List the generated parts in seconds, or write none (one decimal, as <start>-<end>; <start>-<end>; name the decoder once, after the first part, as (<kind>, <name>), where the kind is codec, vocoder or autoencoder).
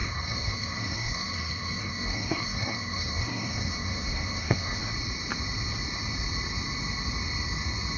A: 0.0-4.8 (codec, SNAC)